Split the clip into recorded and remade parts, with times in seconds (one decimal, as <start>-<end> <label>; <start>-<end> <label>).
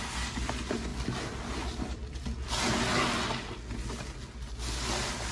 0.0-0.9 remade; 0.9-1.5 recorded; 1.5-2.0 remade; 2.0-5.3 recorded